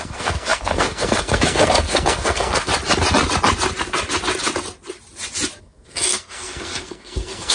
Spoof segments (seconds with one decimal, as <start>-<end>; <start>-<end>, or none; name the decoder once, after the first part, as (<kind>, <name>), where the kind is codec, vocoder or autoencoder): 0.0-2.7 (codec, SNAC); 5.6-7.5